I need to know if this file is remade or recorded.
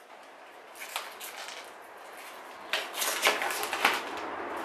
recorded